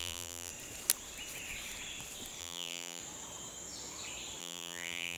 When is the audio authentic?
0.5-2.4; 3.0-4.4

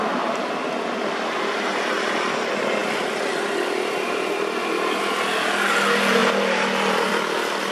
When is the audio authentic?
0.0-1.7; 2.3-7.7

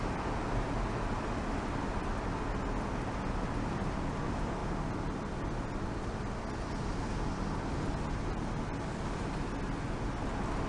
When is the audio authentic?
0.0-10.7

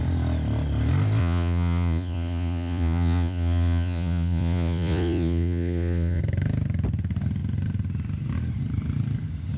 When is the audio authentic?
0.0-1.2; 6.2-9.6